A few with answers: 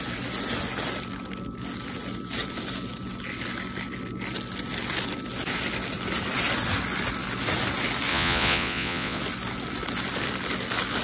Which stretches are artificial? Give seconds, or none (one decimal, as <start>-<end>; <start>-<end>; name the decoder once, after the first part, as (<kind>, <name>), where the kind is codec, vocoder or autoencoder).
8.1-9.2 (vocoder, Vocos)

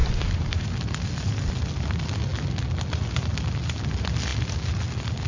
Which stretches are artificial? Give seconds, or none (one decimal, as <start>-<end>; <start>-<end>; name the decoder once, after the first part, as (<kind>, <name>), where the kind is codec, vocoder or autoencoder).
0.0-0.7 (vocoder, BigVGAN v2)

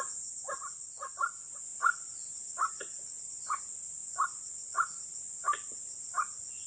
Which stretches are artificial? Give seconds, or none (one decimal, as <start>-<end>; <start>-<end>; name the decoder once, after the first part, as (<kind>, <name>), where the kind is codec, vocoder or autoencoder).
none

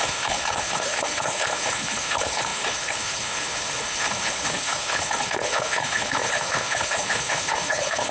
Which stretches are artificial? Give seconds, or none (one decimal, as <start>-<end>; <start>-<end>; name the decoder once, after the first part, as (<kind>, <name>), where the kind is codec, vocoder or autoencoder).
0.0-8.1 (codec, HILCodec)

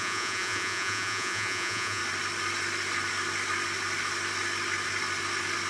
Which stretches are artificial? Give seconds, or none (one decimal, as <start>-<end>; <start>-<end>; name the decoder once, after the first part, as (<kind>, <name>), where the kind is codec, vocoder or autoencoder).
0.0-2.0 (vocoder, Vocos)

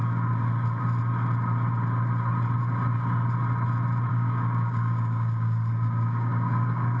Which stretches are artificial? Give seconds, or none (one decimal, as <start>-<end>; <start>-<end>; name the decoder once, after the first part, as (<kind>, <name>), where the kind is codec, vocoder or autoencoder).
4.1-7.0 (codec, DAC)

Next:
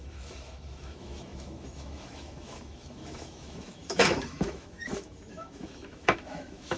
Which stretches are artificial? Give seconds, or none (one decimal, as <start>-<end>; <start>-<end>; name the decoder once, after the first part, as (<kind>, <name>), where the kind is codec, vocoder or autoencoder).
0.0-6.8 (autoencoder, DAC-VAE)

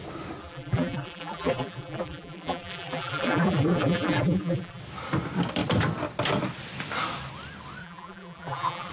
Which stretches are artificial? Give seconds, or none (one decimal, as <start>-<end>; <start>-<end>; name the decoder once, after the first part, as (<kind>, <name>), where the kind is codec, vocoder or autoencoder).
0.4-4.8 (vocoder, BigVGAN v2); 7.8-8.9